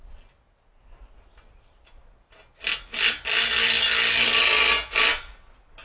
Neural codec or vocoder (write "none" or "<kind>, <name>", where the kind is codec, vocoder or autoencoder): none